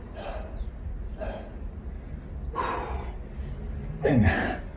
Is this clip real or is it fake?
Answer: real